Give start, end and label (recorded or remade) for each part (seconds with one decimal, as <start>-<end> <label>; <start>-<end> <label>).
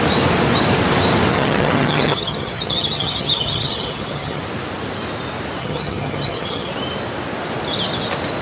0.0-1.3 recorded; 1.3-4.4 remade; 4.4-5.6 recorded; 5.6-6.7 remade; 6.7-8.4 recorded